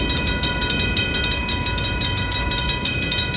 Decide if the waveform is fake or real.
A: real